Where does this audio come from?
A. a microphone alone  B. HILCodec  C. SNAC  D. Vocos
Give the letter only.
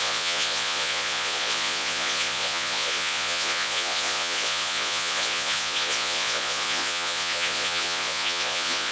D